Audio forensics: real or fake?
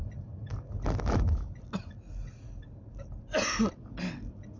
real